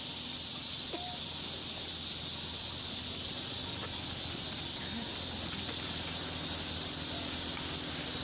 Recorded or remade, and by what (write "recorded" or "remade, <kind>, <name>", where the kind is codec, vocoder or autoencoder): recorded